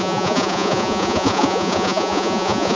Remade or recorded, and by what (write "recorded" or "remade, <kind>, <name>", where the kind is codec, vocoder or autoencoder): remade, vocoder, Vocos